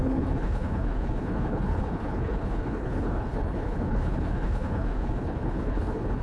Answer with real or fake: fake